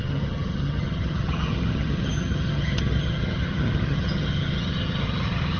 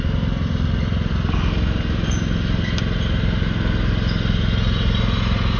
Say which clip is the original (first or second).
second